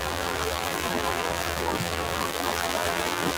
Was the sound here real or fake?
fake